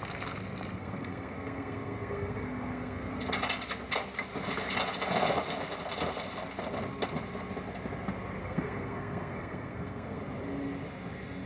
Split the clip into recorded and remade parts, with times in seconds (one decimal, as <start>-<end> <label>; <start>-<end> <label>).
0.0-0.8 recorded; 0.8-3.1 remade; 3.1-8.4 recorded; 8.4-10.2 remade; 10.2-11.5 recorded